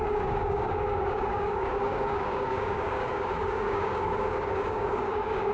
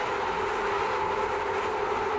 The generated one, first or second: first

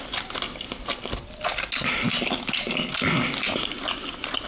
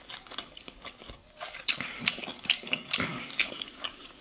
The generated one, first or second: second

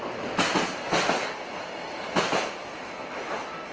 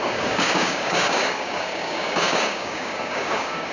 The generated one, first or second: second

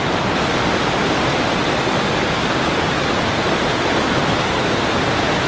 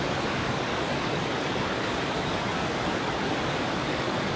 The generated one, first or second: second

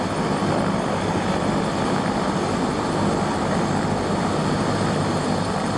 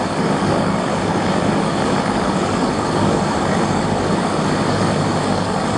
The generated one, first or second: second